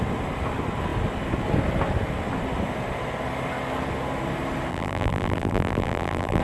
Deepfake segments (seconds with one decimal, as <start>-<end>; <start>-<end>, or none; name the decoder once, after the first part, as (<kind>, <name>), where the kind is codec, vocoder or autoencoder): 4.7-6.4 (vocoder, BigVGAN v2)